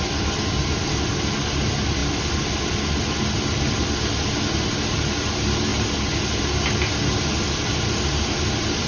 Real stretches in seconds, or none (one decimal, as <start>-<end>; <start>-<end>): 0.0-8.9